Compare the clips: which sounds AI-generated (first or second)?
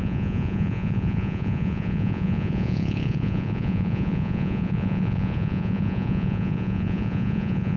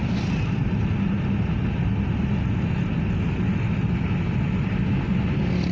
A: first